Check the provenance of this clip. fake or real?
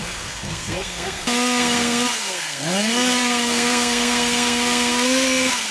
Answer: fake